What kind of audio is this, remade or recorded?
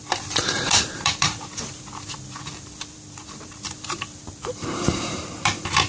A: remade